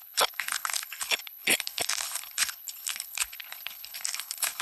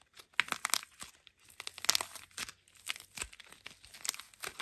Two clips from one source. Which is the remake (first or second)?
first